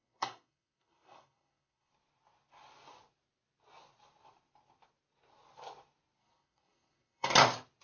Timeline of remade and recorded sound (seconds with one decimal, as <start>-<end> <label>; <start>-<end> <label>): 0.0-1.9 remade; 1.9-6.2 recorded; 6.2-7.3 remade; 7.3-7.8 recorded

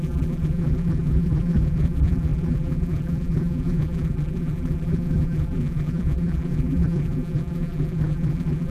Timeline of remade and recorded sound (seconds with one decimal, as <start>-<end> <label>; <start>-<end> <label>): 0.0-8.7 remade